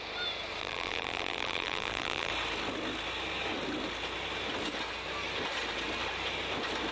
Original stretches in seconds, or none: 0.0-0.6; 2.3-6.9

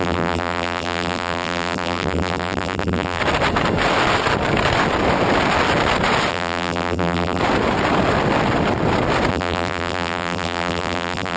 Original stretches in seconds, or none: 3.2-6.3; 7.4-9.3

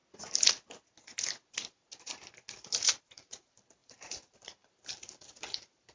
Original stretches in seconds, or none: 0.0-3.0

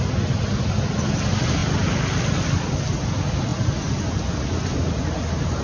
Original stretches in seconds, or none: 0.0-1.6; 3.0-3.5; 4.0-5.6

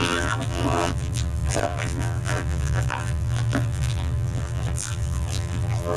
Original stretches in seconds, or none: none

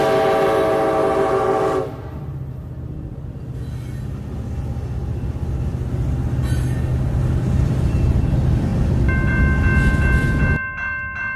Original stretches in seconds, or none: 0.0-1.0; 3.3-6.9; 8.2-11.4

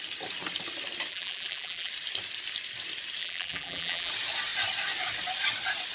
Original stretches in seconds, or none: 0.0-1.1; 1.9-3.2; 4.1-5.9

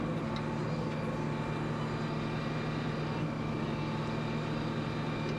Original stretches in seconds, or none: 0.0-5.4